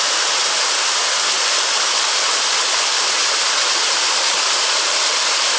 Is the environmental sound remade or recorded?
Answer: recorded